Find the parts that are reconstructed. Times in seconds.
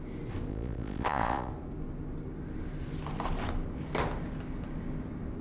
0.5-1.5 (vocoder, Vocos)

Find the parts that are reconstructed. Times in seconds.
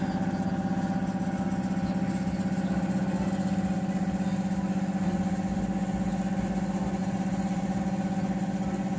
7.0-7.8 (vocoder, BigVGAN v2)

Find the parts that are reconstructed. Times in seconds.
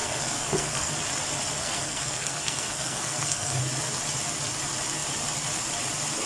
0.0-0.9 (codec, SNAC); 1.6-3.6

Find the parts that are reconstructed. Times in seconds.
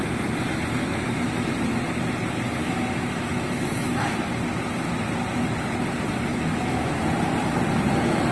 0.8-1.5 (autoencoder, DAC-VAE); 2.6-4.1; 6.3-7.0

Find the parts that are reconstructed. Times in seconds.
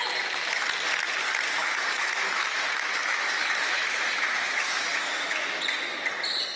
1.6-5.6 (autoencoder, DAC-VAE)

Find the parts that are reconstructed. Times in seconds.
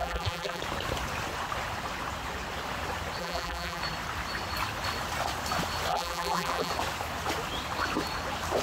0.0-0.6 (vocoder, BigVGAN v2); 3.2-3.8; 5.9-6.7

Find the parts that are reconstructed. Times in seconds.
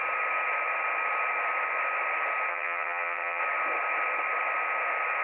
2.5-3.4 (vocoder, HiFi-GAN)